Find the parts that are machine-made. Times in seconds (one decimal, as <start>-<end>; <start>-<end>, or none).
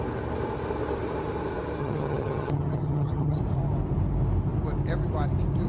1.8-3.4